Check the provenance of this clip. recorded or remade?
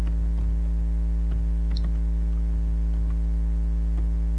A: recorded